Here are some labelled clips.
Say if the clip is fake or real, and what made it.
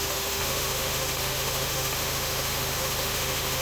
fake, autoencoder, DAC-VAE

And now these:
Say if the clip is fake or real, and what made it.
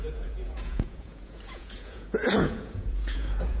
fake, vocoder, Vocos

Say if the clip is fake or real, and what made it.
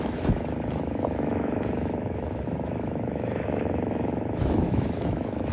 fake, autoencoder, DAC-VAE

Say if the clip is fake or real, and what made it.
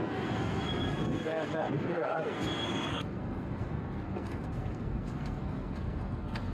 fake, codec, SNAC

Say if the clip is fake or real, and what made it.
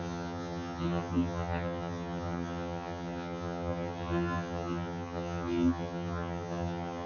fake, vocoder, HiFi-GAN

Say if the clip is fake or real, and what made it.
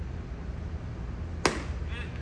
real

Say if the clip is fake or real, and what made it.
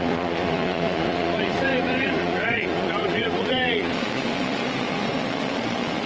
fake, vocoder, Vocos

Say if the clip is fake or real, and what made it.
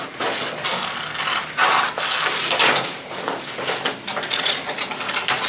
real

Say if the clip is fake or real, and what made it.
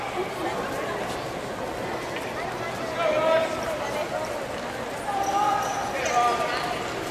real